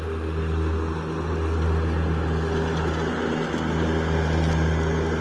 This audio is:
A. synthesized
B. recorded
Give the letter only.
B